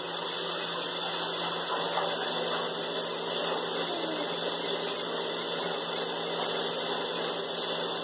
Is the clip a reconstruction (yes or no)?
no